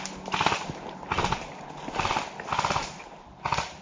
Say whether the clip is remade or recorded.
recorded